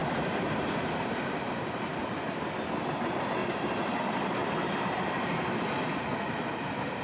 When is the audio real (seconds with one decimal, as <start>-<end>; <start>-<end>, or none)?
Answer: 2.0-3.4; 4.0-4.4; 5.0-7.0